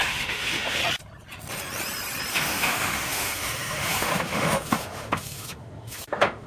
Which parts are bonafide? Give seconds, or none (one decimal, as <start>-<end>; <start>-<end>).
0.8-2.3